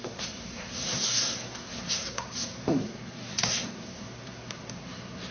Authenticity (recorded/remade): remade